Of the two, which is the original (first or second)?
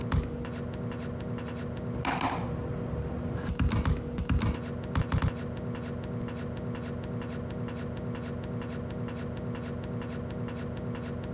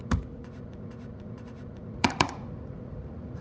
first